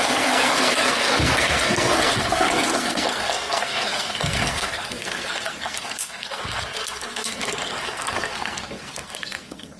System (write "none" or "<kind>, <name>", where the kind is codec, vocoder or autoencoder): codec, SNAC